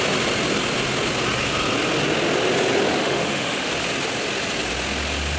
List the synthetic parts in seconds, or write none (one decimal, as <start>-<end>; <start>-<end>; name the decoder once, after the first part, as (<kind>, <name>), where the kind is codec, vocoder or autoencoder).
3.0-3.7 (autoencoder, DAC-VAE)